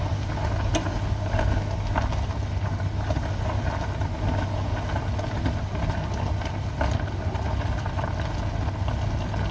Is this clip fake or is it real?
real